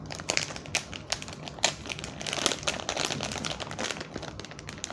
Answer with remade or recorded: recorded